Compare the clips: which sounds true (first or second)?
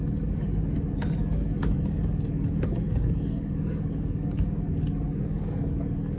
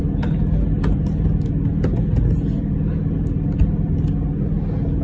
second